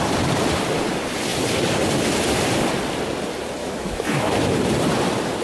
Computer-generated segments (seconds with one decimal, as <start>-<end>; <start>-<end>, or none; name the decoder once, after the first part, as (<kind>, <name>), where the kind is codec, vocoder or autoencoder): 3.6-4.6 (autoencoder, DAC-VAE)